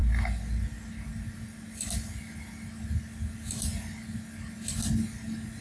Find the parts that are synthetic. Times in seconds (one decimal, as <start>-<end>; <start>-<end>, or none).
none